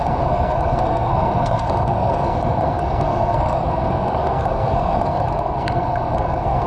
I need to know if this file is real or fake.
fake